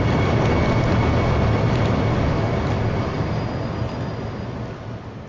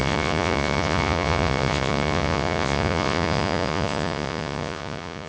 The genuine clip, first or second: first